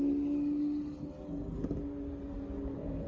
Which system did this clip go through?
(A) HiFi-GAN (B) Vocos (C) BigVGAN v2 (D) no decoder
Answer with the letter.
D